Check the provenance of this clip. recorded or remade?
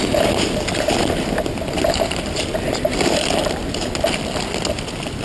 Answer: recorded